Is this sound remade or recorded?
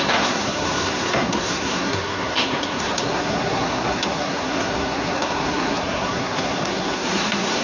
remade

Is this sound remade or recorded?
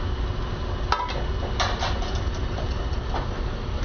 recorded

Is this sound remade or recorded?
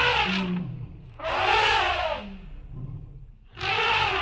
recorded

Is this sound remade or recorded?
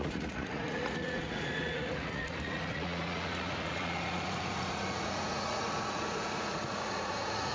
remade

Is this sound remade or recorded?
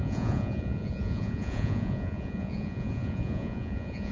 remade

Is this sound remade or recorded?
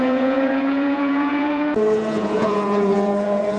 remade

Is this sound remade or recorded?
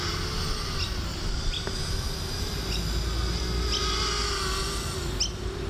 recorded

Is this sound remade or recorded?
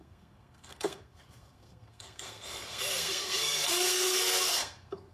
remade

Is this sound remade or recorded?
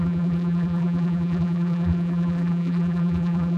remade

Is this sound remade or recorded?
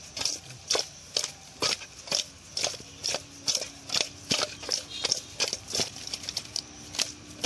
recorded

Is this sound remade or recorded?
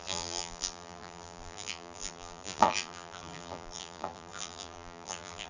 remade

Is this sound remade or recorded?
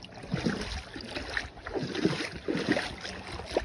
recorded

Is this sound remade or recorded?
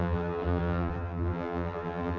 remade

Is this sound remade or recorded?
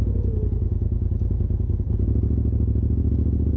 recorded